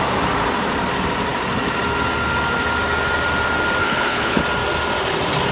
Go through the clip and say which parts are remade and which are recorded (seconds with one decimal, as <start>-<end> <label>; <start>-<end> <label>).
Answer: 0.0-3.8 recorded; 3.8-4.4 remade; 4.4-5.5 recorded